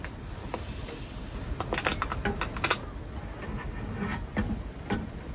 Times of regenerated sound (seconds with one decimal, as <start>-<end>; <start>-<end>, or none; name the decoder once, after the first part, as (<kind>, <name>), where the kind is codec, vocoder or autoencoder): none